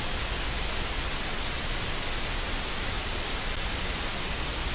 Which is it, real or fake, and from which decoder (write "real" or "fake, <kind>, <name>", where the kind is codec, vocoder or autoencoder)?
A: real